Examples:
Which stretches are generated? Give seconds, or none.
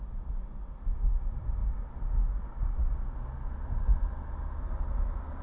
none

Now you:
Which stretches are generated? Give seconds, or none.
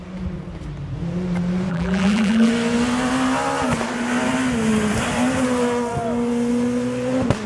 1.7-2.5 (vocoder, BigVGAN v2)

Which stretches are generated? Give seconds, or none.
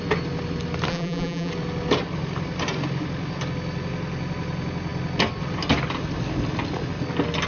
0.9-1.5 (vocoder, BigVGAN v2)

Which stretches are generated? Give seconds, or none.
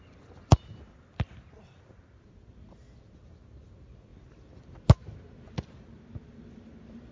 none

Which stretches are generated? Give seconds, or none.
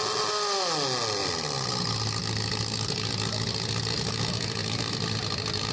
1.2-1.8 (vocoder, BigVGAN v2); 4.6-5.7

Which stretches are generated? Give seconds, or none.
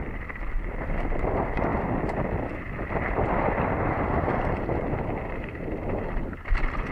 0.0-1.7 (vocoder, BigVGAN v2); 3.6-6.9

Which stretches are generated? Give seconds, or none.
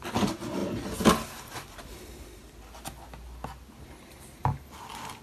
none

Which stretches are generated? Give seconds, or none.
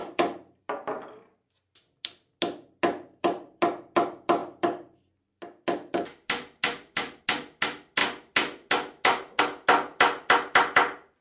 0.0-0.6 (vocoder, BigVGAN v2)